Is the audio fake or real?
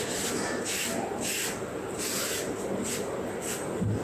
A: real